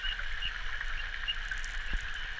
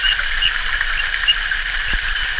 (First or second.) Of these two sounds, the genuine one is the first